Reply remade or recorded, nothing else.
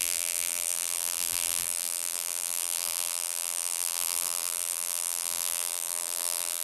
remade